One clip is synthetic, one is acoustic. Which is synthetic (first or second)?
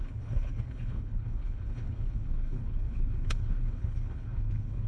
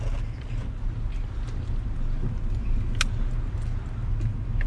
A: first